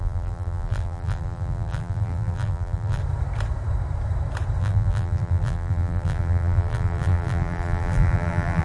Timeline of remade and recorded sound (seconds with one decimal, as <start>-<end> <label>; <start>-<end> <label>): 0.0-3.0 remade; 3.0-4.6 recorded; 4.6-8.6 remade